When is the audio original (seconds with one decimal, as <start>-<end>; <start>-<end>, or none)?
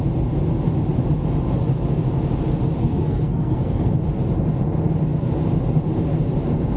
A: 0.0-2.8; 3.9-6.8